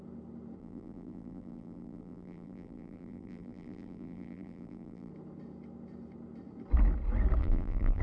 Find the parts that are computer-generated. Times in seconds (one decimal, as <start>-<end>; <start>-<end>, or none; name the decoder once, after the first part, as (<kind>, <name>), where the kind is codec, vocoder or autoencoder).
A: 0.6-5.1 (vocoder, BigVGAN v2); 7.4-8.0